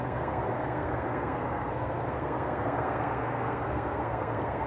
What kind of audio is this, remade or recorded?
remade